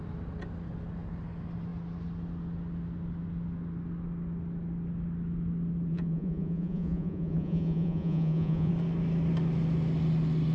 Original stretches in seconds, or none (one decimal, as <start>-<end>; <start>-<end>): 0.0-5.9; 8.7-10.5